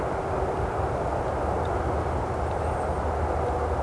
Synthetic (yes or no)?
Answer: no